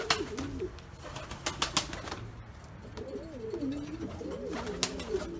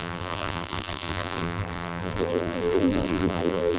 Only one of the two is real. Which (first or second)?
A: first